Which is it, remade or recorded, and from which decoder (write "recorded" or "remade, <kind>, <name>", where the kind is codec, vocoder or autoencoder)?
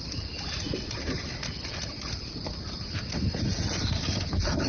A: recorded